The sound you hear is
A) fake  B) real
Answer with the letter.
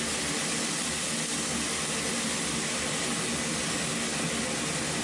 B